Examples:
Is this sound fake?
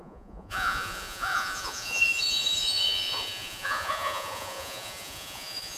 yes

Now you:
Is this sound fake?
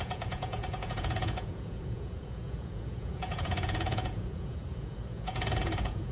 yes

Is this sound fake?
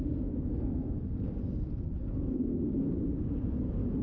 no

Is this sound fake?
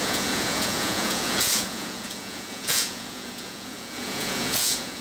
yes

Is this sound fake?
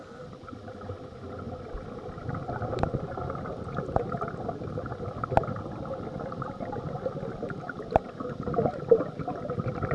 no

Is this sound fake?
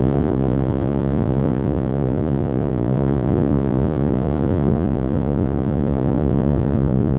yes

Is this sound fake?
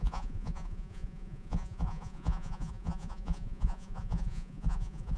yes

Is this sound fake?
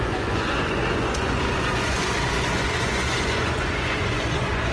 yes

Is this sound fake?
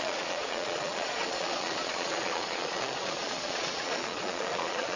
yes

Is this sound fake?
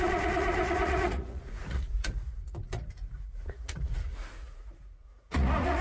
yes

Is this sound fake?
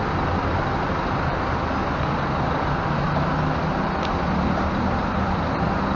no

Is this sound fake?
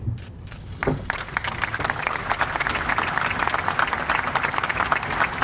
no